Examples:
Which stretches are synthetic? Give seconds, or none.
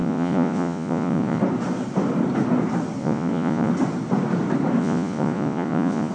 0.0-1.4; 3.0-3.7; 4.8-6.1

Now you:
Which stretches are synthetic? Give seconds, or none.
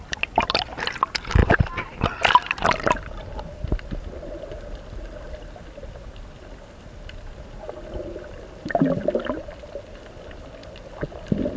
none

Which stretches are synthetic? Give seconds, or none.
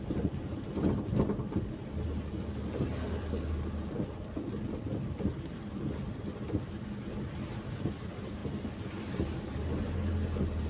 none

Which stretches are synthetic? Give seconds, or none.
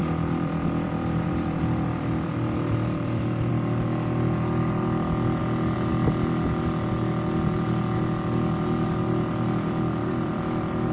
0.0-3.5; 10.0-10.9